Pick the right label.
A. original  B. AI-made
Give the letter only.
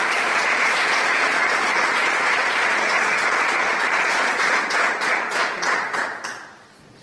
B